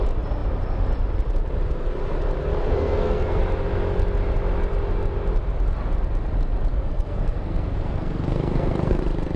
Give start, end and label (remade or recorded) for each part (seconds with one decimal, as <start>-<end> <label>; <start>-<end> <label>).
0.0-2.6 recorded; 2.6-3.4 remade; 3.4-6.7 recorded; 6.7-9.0 remade; 9.0-9.4 recorded